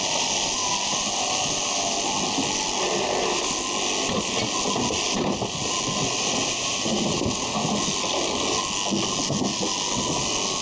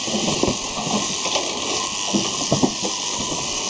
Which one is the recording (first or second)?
first